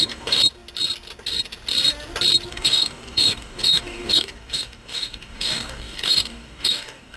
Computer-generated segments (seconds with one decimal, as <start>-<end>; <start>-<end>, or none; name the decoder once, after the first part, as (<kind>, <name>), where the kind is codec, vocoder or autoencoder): 0.0-0.4 (codec, DAC); 2.5-7.2